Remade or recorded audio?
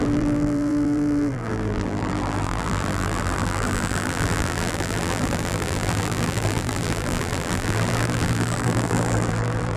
remade